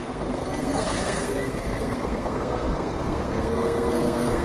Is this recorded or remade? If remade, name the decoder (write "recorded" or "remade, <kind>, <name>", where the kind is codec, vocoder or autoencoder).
remade, codec, SNAC